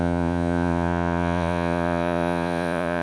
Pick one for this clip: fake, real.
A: fake